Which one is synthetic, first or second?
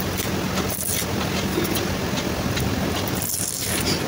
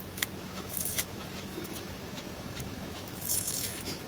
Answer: second